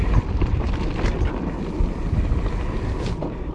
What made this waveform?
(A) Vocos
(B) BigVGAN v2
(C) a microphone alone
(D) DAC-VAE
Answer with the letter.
C